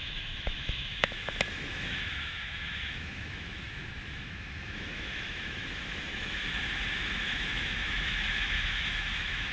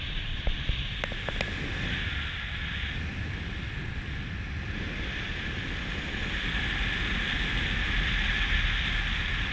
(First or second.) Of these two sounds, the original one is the second